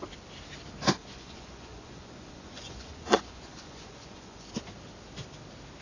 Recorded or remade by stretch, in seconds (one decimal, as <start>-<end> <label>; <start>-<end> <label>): 0.0-1.0 recorded; 1.0-4.5 remade; 4.5-5.8 recorded

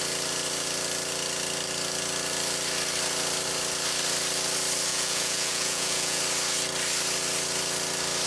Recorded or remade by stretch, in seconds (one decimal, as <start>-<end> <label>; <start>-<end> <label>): 0.0-4.9 recorded; 4.9-6.2 remade; 6.2-8.3 recorded